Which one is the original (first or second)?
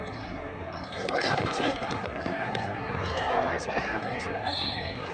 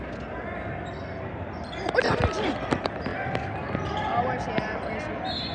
second